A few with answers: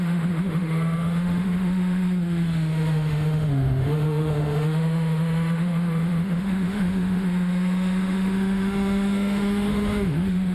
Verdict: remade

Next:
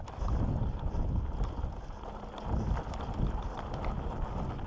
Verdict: recorded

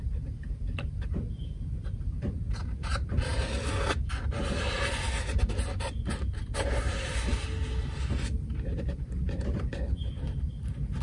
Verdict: recorded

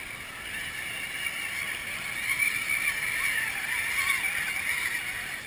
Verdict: recorded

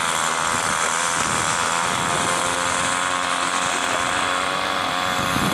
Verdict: recorded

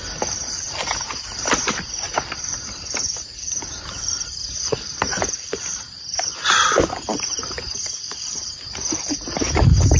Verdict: remade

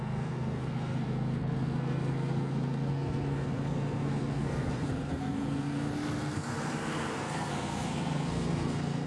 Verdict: remade